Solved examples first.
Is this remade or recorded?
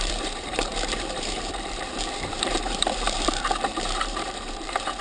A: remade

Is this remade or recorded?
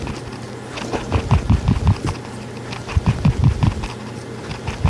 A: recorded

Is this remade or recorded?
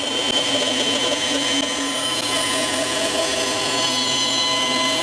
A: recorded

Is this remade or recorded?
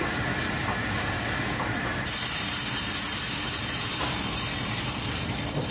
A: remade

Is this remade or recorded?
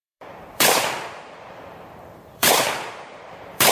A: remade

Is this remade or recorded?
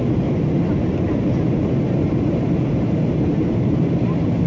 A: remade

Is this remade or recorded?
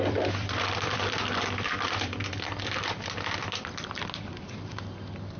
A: remade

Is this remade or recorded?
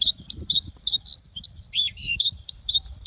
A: remade